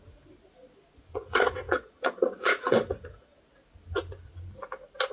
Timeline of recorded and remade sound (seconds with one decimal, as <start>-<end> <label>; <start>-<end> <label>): 0.0-1.1 recorded; 1.1-3.4 remade; 3.4-5.1 recorded